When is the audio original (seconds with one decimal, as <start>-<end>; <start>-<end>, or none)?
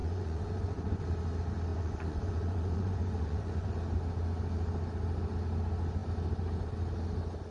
1.0-1.7; 3.7-7.5